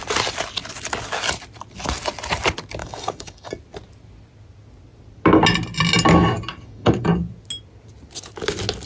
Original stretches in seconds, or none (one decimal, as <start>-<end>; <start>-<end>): 0.0-2.8; 3.5-6.5; 7.1-8.9